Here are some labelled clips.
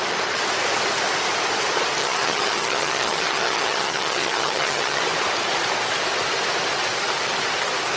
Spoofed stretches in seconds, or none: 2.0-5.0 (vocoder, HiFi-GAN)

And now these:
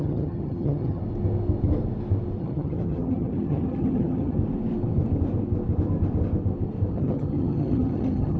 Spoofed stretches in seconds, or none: 0.0-1.0 (vocoder, HiFi-GAN); 2.4-4.4; 6.9-8.4

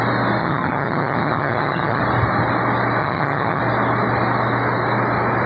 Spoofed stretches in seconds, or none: 0.4-2.0 (vocoder, HiFi-GAN); 3.0-3.6

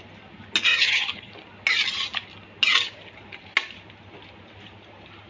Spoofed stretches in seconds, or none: 0.7-1.3 (vocoder, HiFi-GAN)

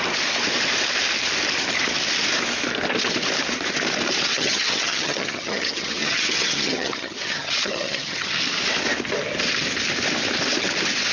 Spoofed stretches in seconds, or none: 4.3-8.3 (vocoder, HiFi-GAN)

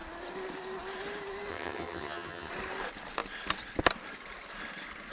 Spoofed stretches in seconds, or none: 1.5-2.5 (vocoder, HiFi-GAN)

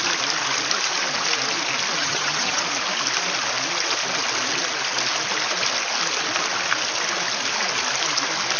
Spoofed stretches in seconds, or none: 2.0-2.6 (vocoder, HiFi-GAN)